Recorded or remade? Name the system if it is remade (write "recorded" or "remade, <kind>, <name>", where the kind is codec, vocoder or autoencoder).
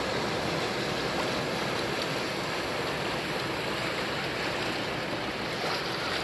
recorded